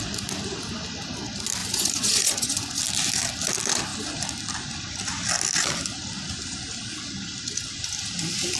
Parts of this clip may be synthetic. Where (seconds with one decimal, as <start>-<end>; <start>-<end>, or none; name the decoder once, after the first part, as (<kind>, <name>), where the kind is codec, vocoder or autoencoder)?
1.6-2.8 (vocoder, Vocos)